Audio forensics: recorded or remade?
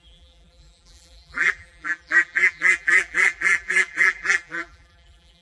remade